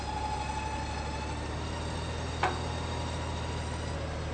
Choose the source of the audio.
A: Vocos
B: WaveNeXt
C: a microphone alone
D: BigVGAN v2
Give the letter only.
C